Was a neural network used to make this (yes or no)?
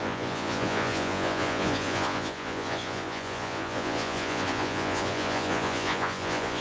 yes